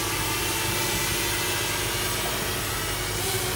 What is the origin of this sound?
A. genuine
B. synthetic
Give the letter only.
A